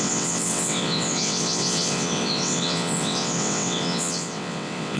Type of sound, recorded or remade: remade